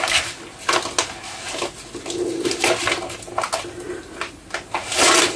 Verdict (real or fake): real